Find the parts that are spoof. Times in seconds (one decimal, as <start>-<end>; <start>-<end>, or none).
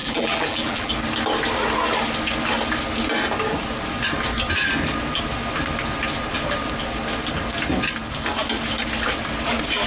0.0-0.9